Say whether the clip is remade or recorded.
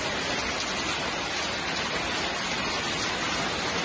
recorded